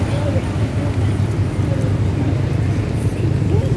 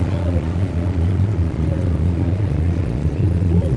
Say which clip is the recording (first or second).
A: first